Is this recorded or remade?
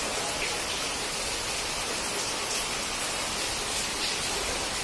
recorded